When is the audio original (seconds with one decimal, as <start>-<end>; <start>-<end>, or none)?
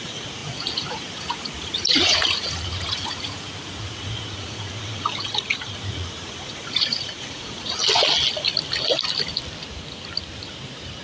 7.8-11.0